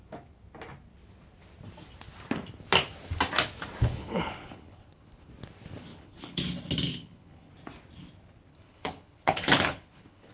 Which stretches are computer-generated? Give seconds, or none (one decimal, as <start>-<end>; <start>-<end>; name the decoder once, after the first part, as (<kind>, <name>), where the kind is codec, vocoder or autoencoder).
3.8-5.3 (codec, HILCodec); 5.9-6.4; 6.9-7.5; 8.5-10.3